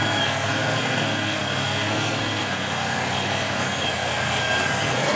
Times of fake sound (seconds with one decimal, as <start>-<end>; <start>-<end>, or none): 0.0-5.2